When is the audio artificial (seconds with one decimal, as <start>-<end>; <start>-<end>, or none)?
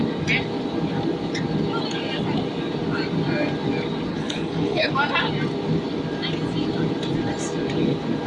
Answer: 4.1-4.9